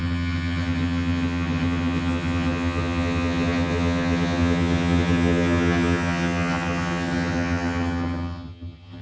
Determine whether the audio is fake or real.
fake